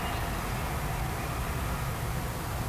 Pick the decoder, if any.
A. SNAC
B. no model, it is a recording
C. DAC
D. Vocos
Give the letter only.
B